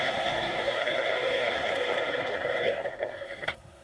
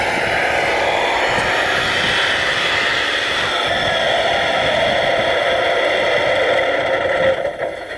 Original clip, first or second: second